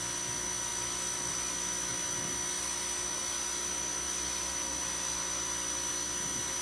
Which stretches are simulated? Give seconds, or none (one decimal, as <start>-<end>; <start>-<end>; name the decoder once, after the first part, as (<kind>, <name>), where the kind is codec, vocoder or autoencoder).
none